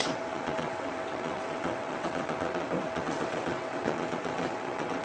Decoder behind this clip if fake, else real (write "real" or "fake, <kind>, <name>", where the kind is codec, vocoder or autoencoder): fake, vocoder, WaveNeXt